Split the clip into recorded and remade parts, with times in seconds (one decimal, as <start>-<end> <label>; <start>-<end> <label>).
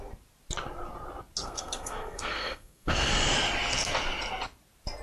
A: 0.0-1.4 recorded; 1.4-3.1 remade; 3.1-5.0 recorded